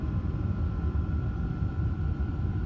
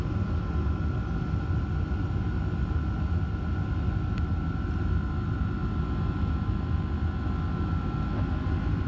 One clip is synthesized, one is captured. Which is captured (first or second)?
second